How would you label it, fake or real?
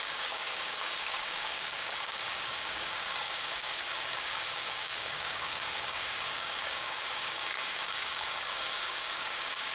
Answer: fake